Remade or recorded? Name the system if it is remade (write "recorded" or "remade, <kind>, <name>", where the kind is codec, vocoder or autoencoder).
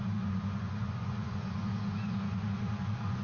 remade, vocoder, Vocos